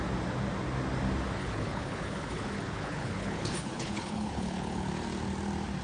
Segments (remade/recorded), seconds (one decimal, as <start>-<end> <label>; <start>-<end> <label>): 0.0-1.4 recorded; 1.4-4.9 remade; 4.9-5.8 recorded